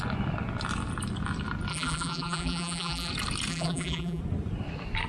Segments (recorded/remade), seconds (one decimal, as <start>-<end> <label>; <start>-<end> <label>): 0.0-1.7 recorded; 1.7-3.1 remade; 3.1-3.5 recorded; 3.5-4.2 remade; 4.2-5.1 recorded